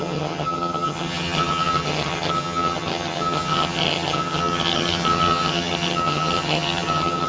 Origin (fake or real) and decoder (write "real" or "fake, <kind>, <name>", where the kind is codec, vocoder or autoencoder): fake, vocoder, HiFi-GAN